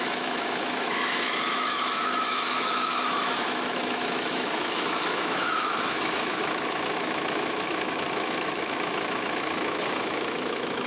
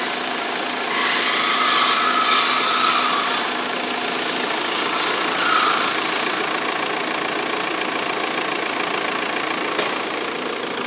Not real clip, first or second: first